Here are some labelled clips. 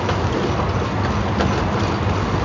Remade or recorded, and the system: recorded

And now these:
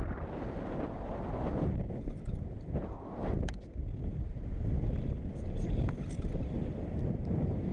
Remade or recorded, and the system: recorded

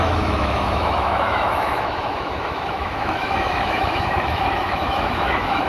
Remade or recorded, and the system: remade, autoencoder, DAC-VAE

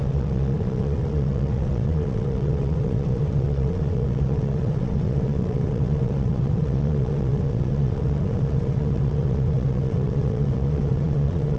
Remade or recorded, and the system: remade, vocoder, WaveNeXt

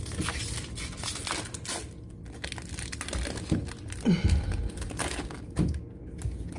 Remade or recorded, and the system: recorded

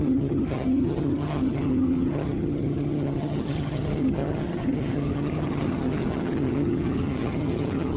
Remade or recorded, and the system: remade, vocoder, HiFi-GAN